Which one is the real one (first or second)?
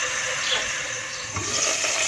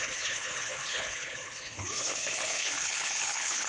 first